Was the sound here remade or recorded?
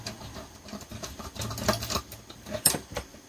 remade